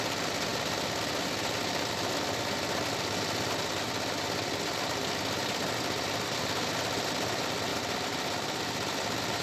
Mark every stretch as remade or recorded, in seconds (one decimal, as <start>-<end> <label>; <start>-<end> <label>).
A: 0.0-7.7 recorded; 7.7-8.6 remade; 8.6-9.4 recorded